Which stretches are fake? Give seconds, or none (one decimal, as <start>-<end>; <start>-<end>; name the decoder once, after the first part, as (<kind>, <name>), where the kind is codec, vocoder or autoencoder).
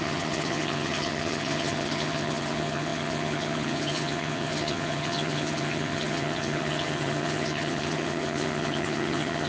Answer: 0.0-9.5 (vocoder, HiFi-GAN)